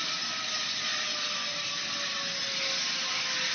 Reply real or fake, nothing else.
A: real